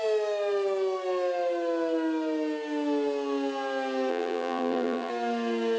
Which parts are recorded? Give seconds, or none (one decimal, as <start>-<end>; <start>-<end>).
0.0-4.1; 5.1-5.8